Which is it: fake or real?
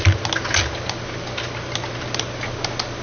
real